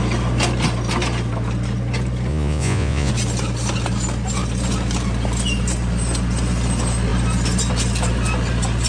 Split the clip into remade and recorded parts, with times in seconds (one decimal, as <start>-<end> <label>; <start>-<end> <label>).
0.0-2.3 recorded; 2.3-3.1 remade; 3.1-8.9 recorded